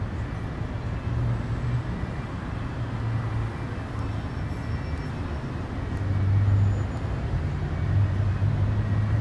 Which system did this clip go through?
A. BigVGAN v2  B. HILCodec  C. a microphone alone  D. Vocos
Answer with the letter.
C